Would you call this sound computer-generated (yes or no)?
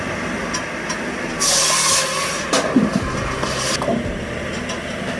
no